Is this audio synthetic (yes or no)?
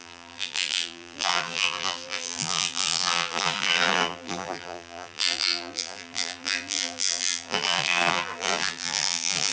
yes